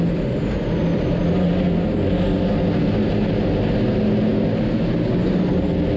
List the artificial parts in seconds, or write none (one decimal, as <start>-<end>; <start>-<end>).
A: none